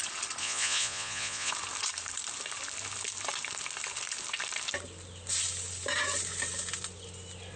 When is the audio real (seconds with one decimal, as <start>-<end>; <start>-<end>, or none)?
0.0-0.4; 1.5-7.6